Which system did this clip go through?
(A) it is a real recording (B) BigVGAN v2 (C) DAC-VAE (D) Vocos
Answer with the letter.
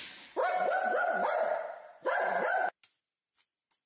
B